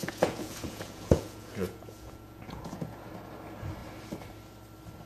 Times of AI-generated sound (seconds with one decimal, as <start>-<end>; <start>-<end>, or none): 0.0-3.1